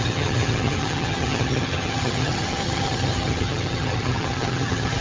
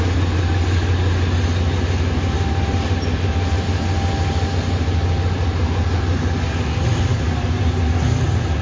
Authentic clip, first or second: second